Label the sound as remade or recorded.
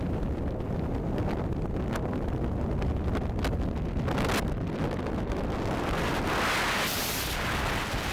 recorded